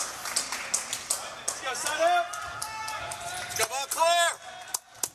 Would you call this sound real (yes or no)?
yes